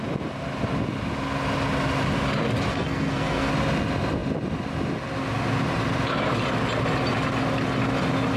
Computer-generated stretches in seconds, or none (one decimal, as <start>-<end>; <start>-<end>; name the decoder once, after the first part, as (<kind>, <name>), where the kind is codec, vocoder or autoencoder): 2.7-3.5 (codec, SNAC)